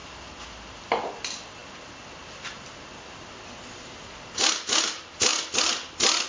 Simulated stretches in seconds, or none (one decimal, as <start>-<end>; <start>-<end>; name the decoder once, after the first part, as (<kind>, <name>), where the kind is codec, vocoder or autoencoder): none